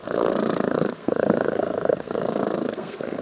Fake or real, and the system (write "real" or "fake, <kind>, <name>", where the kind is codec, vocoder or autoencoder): fake, codec, SNAC